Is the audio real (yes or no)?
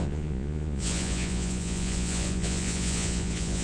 no